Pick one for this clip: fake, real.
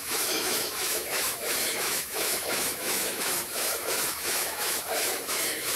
fake